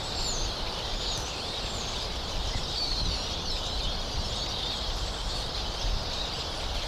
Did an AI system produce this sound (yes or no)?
yes